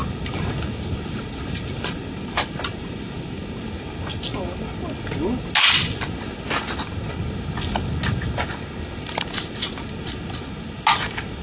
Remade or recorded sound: recorded